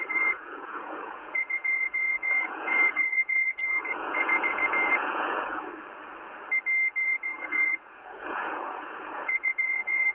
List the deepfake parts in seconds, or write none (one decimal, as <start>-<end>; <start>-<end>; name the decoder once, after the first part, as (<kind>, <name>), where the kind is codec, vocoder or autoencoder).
0.0-5.7 (vocoder, Vocos); 7.0-10.1